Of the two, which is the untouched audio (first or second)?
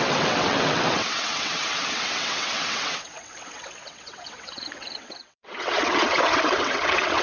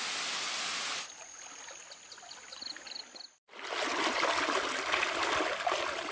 second